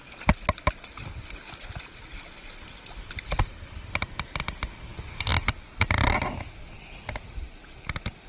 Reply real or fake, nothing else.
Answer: real